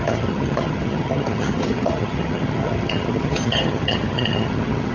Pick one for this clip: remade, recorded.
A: remade